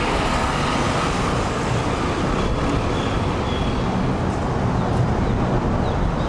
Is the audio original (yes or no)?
yes